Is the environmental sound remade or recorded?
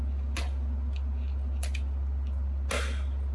recorded